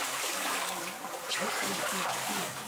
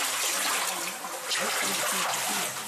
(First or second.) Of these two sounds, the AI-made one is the first